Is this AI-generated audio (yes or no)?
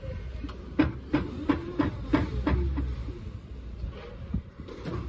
no